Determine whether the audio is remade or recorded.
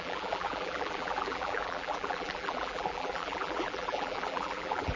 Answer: remade